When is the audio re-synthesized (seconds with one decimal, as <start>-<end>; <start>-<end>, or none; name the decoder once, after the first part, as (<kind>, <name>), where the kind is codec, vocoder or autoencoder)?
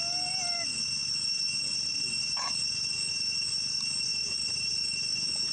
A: none